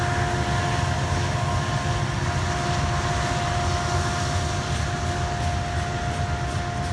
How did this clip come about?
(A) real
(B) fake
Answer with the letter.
A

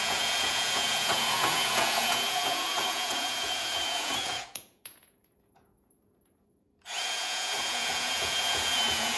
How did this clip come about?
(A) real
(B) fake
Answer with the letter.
B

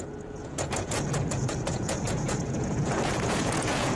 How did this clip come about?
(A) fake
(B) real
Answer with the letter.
A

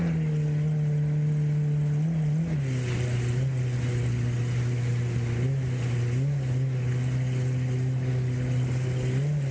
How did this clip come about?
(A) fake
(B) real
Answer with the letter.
B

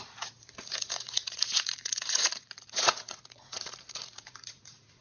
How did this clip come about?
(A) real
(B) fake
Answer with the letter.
B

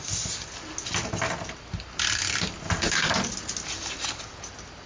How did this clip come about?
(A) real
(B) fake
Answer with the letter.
A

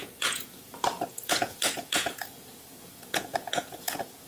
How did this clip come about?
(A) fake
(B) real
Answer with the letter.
A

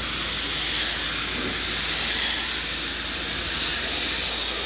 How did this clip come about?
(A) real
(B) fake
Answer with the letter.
A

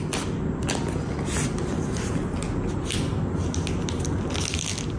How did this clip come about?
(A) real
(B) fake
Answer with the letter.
A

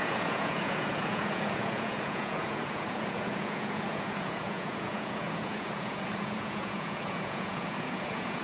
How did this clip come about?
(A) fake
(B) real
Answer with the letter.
A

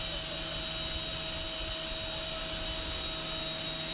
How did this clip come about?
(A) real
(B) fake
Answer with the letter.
A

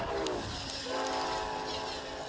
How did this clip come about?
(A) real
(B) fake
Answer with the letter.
A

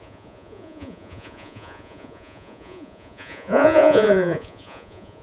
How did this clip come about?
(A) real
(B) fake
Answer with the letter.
B